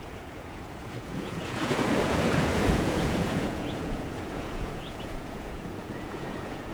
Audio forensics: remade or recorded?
remade